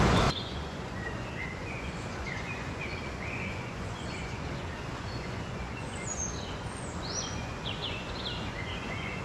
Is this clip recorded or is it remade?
remade